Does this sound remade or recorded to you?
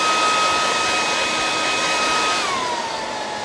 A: recorded